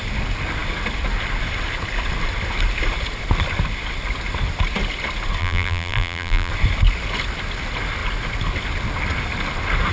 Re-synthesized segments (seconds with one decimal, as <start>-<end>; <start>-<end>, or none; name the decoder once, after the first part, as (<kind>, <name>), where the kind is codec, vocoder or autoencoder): 5.4-6.5 (vocoder, BigVGAN v2)